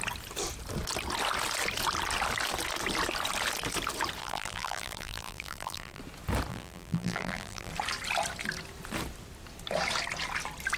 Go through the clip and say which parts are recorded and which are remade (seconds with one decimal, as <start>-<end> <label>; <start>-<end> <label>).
0.0-4.2 recorded; 4.2-6.0 remade; 6.0-6.5 recorded; 6.5-7.7 remade; 7.7-10.8 recorded